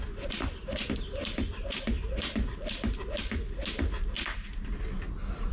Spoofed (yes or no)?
no